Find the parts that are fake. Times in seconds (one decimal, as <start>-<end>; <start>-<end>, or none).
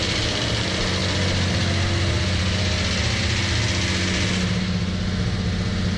none